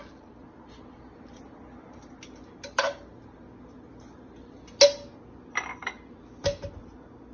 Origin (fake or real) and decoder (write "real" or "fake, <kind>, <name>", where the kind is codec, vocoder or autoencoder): real